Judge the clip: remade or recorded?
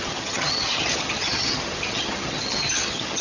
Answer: remade